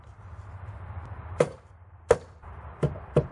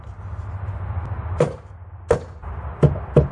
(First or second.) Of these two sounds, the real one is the second